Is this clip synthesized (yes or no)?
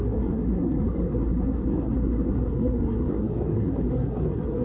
yes